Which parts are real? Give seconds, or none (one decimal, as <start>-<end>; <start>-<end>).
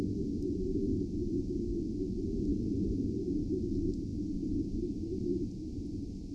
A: 0.0-6.3